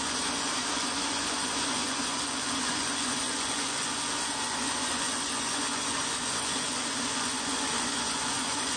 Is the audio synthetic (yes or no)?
yes